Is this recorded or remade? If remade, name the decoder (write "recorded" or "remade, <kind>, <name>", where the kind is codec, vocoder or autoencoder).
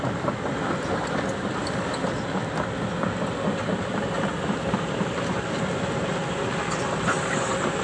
recorded